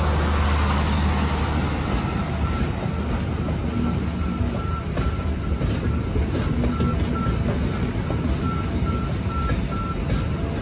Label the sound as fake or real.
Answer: real